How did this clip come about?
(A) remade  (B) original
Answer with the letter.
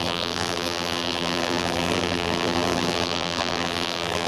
A